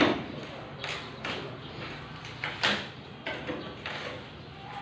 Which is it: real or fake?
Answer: real